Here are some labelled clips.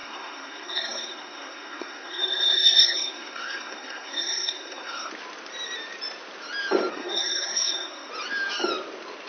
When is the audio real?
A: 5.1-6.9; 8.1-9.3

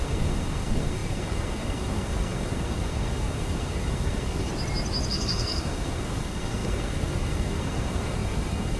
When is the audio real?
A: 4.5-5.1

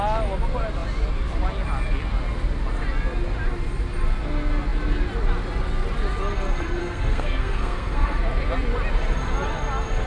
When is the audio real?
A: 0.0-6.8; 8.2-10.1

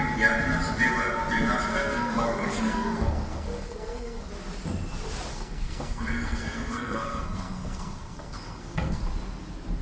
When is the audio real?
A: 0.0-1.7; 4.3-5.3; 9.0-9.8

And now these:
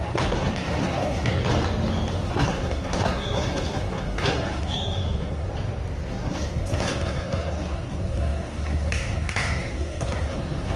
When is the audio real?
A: 1.4-2.1; 5.5-6.1